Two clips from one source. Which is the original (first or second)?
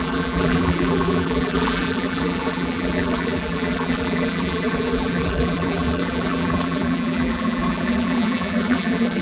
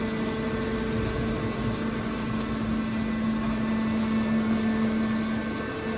second